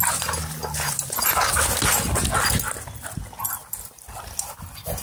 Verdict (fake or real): real